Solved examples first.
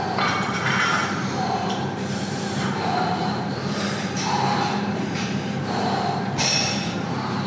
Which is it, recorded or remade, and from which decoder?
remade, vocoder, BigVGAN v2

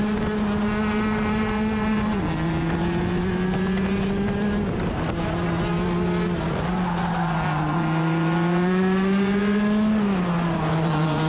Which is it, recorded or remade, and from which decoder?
recorded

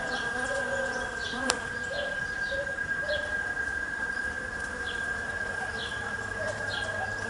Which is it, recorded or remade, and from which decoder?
remade, vocoder, BigVGAN v2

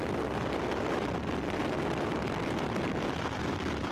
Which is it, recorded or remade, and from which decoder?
remade, vocoder, BigVGAN v2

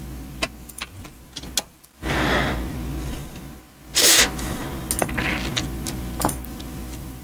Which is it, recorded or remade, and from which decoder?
recorded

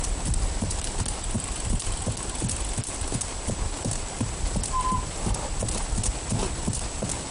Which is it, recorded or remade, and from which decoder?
recorded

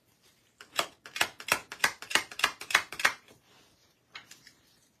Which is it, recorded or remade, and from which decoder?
remade, vocoder, BigVGAN v2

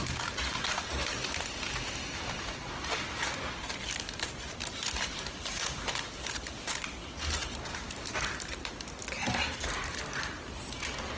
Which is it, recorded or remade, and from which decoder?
recorded